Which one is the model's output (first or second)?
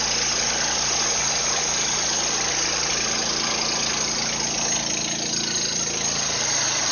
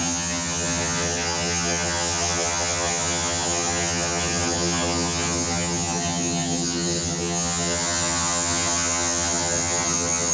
second